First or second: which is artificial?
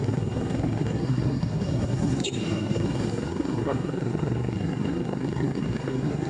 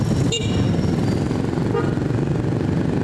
first